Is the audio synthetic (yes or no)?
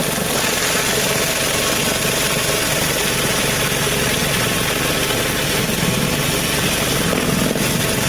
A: no